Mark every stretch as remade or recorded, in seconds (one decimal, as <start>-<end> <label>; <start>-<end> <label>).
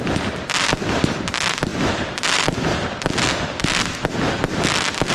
0.0-5.1 recorded